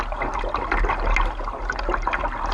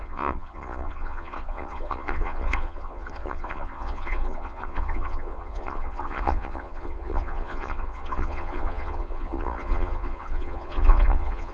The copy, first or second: second